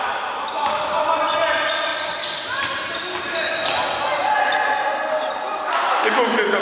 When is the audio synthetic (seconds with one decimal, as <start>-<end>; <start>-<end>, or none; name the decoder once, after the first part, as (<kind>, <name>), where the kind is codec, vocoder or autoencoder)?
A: 1.9-3.0 (vocoder, BigVGAN v2)